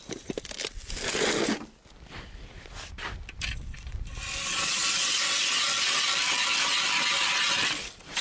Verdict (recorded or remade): recorded